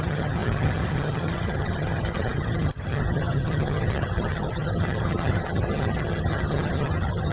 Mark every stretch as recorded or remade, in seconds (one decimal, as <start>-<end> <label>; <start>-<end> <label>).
0.0-7.3 remade